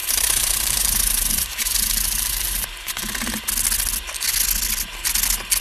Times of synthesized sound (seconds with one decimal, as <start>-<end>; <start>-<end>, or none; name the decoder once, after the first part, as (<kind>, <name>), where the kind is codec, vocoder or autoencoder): 0.0-3.4 (vocoder, BigVGAN v2)

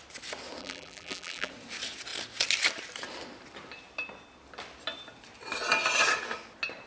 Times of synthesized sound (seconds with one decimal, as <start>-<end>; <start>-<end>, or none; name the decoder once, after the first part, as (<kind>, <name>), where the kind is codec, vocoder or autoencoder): 0.6-1.5 (vocoder, BigVGAN v2)

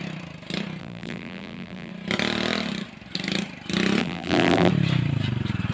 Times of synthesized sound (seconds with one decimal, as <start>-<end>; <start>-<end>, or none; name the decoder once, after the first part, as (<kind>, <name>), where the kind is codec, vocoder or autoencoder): 0.8-1.9 (vocoder, BigVGAN v2); 4.0-4.7